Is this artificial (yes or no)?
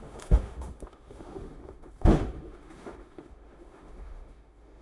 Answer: yes